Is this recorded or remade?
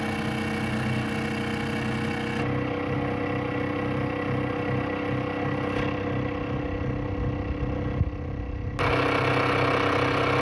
recorded